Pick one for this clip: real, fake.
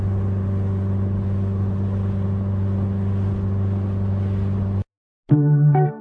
real